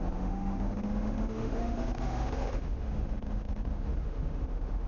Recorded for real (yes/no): no